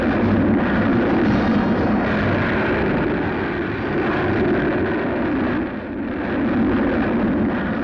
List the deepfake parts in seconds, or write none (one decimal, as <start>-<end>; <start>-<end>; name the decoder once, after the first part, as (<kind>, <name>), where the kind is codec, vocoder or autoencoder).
none